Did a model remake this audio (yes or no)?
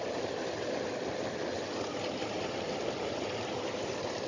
no